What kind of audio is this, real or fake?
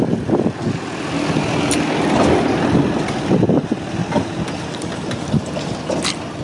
real